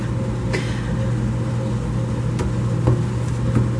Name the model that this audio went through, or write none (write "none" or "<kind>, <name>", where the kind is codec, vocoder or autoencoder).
none